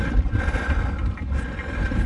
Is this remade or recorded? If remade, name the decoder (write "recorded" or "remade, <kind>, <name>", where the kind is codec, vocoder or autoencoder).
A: recorded